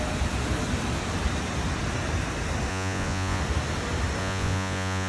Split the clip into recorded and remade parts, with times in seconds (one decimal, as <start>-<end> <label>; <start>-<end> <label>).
0.0-2.7 recorded; 2.7-3.4 remade; 3.4-4.2 recorded; 4.2-5.1 remade